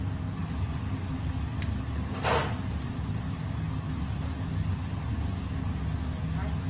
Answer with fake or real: real